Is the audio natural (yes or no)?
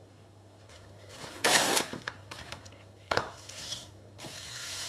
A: no